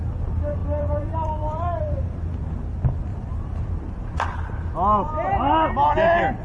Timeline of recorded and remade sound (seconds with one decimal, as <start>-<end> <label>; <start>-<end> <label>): 0.0-0.6 recorded; 0.6-1.8 remade; 1.8-3.1 recorded; 3.1-3.6 remade; 3.6-6.4 recorded